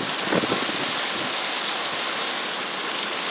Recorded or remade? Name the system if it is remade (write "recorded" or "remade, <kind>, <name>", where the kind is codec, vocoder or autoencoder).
recorded